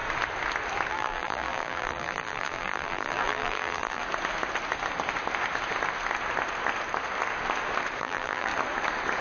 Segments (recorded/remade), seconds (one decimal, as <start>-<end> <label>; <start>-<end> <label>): 0.0-0.9 recorded; 0.9-4.0 remade; 4.0-8.0 recorded; 8.0-8.5 remade; 8.5-9.2 recorded